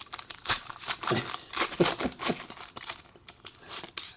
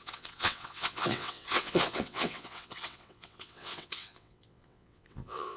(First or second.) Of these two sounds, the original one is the first